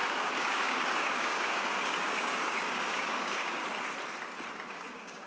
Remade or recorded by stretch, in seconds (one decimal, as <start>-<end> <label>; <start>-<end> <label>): 0.0-3.6 remade; 3.6-4.7 recorded; 4.7-5.3 remade